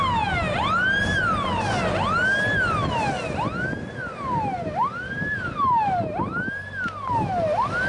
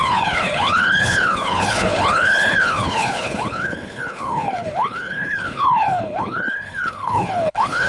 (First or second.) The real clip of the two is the first